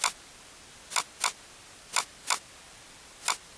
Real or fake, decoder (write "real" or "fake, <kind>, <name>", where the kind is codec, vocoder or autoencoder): real